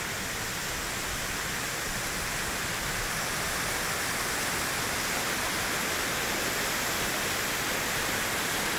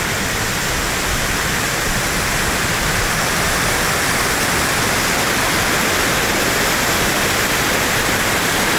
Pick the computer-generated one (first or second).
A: second